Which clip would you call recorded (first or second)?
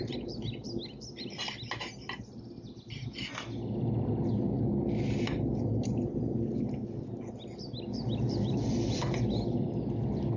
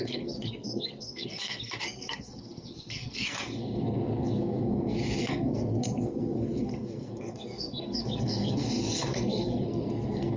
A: first